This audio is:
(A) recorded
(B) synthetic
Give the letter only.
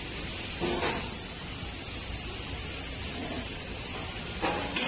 A